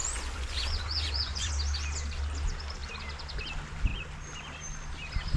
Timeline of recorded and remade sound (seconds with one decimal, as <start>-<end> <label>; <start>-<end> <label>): 0.0-1.5 remade; 1.5-5.4 recorded